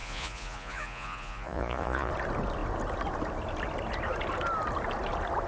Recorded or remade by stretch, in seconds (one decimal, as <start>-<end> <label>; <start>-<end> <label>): 0.0-2.1 remade; 2.1-5.5 recorded